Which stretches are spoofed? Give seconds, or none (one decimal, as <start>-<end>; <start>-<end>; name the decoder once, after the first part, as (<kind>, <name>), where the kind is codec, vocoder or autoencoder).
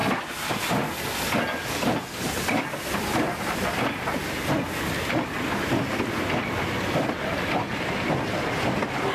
none